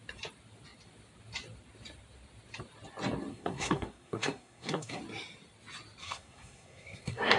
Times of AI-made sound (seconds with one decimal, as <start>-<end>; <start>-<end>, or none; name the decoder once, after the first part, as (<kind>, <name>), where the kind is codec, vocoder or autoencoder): 3.3-5.0 (codec, SNAC); 6.0-7.4